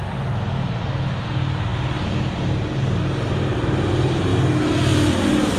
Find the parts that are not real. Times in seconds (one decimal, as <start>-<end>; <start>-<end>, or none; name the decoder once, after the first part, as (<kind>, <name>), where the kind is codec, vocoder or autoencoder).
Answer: none

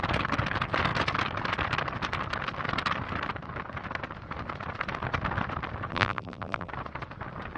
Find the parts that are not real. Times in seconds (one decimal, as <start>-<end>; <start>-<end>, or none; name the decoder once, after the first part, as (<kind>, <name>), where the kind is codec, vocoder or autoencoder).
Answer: 5.9-6.7 (vocoder, BigVGAN v2)

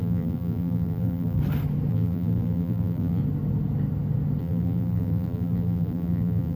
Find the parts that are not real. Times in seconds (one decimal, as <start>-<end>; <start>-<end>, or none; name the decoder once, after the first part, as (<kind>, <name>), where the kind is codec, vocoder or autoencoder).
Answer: 0.0-1.4 (vocoder, BigVGAN v2); 1.9-3.2; 4.4-6.6

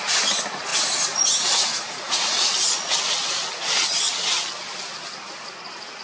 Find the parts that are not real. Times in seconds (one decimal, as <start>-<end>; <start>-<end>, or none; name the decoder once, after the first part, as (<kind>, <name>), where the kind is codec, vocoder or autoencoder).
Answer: 1.7-2.5 (vocoder, Vocos)